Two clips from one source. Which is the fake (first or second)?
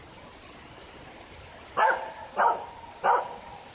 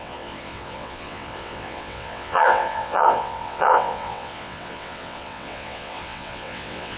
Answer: second